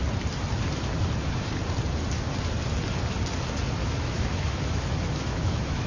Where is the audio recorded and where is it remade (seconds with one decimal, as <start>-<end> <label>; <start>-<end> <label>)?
0.0-3.8 recorded; 3.8-5.9 remade